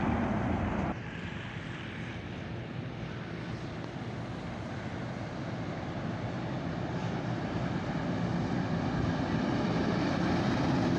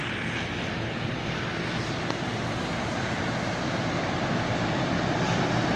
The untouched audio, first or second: second